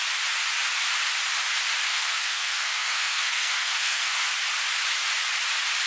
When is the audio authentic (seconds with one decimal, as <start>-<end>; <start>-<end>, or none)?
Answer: 0.0-1.9; 4.3-5.9